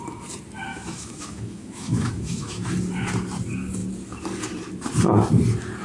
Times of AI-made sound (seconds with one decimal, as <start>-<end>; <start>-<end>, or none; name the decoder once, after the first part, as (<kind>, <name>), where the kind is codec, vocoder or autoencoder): 0.7-2.7 (autoencoder, DAC-VAE)